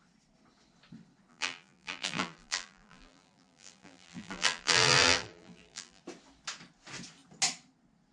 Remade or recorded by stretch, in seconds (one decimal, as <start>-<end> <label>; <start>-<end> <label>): 0.0-1.3 recorded; 1.3-6.0 remade; 6.0-8.1 recorded